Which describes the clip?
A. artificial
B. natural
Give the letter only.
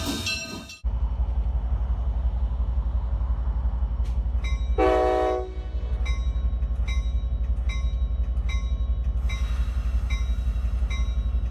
B